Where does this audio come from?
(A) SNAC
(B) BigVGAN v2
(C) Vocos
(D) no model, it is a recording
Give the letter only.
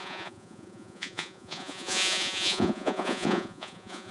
C